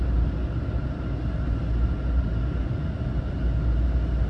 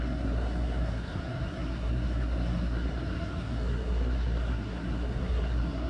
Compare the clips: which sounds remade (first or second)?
second